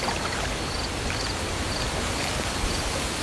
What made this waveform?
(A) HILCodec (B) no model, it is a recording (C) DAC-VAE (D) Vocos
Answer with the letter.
B